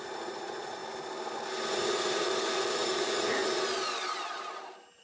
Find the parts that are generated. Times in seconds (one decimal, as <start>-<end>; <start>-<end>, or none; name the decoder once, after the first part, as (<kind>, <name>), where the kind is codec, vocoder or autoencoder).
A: 0.0-0.8 (vocoder, Vocos); 1.7-3.4